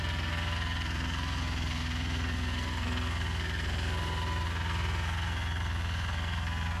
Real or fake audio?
fake